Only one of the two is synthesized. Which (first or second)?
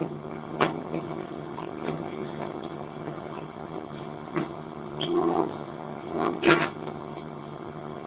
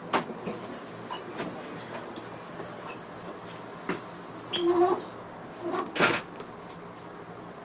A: first